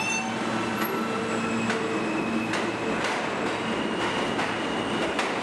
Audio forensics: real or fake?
real